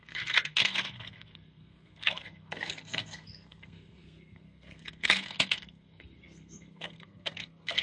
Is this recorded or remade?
remade